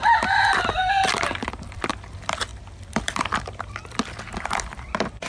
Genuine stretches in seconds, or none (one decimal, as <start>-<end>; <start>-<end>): 0.0-0.8; 1.9-2.5; 3.7-5.3